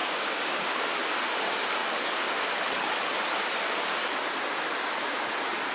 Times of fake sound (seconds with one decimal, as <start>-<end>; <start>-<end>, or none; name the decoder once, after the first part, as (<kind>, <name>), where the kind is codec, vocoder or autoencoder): 0.0-0.8 (codec, DAC)